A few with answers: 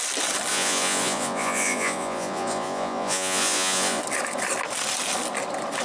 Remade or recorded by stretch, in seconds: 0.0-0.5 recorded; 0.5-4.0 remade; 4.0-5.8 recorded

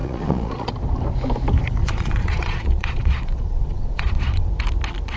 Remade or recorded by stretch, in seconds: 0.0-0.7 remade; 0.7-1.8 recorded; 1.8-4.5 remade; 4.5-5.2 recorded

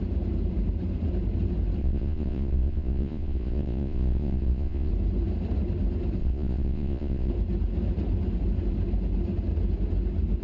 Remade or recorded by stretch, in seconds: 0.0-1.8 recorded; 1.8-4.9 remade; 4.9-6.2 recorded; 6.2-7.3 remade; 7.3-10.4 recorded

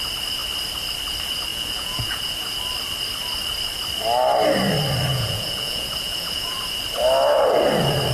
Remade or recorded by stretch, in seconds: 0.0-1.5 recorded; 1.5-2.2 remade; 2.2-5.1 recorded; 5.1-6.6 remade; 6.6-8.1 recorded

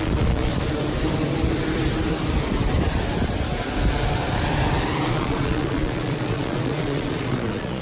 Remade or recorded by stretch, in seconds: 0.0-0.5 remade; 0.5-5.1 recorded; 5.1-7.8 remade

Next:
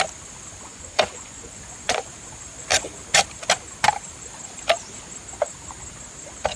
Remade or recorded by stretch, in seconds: 0.0-0.7 recorded; 0.7-2.1 remade; 2.1-6.6 recorded